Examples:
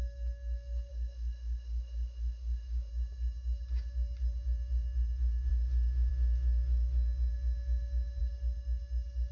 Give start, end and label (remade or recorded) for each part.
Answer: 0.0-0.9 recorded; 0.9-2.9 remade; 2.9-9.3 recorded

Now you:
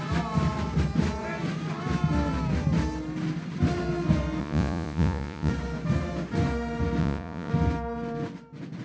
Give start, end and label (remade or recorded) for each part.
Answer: 0.0-4.4 recorded; 4.4-5.5 remade; 5.5-7.0 recorded; 7.0-7.5 remade; 7.5-8.8 recorded

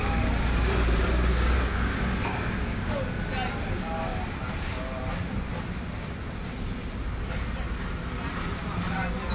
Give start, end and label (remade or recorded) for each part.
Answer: 0.0-1.3 recorded; 1.3-3.0 remade; 3.0-9.3 recorded

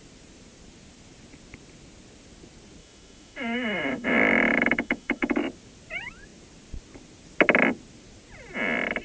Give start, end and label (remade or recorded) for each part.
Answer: 0.0-2.8 recorded; 2.8-5.4 remade; 5.4-9.0 recorded

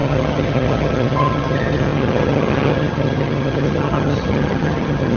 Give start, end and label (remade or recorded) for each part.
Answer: 0.0-5.2 remade

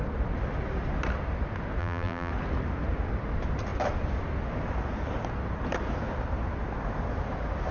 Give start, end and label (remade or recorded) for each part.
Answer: 0.0-1.8 recorded; 1.8-2.3 remade; 2.3-7.7 recorded

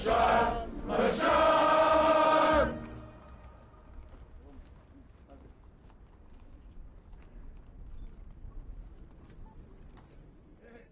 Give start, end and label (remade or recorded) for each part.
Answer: 0.0-10.9 recorded

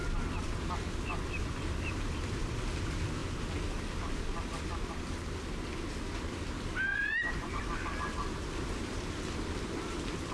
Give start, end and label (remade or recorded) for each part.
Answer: 0.0-6.9 recorded; 6.9-7.5 remade; 7.5-10.3 recorded